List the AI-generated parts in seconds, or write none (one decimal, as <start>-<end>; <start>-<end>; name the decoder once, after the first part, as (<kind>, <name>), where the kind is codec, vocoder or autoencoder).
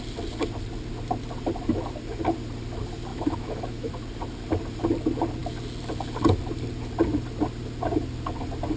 3.1-3.9 (autoencoder, DAC-VAE)